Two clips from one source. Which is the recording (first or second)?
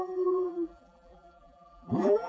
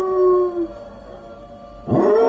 second